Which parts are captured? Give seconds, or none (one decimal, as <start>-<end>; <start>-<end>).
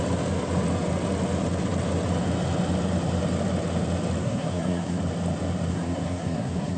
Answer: 0.0-4.2; 5.0-5.7